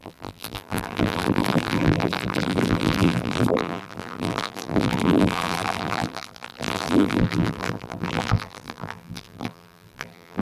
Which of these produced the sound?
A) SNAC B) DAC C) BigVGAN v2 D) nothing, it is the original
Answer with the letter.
C